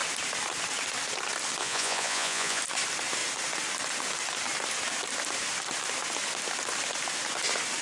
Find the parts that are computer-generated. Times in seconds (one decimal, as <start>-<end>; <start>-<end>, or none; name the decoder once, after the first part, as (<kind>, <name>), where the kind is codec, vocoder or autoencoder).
1.6-2.6 (vocoder, Vocos)